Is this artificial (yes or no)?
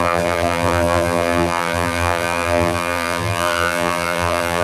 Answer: yes